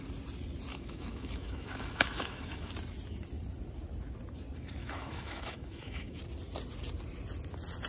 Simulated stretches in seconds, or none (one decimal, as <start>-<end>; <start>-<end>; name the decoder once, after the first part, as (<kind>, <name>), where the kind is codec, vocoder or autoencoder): 0.7-2.7 (autoencoder, DAC-VAE); 4.8-6.2